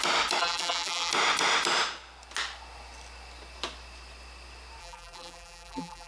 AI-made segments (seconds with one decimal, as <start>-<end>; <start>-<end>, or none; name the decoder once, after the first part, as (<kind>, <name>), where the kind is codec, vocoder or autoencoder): 0.4-1.1 (vocoder, BigVGAN v2); 4.8-6.1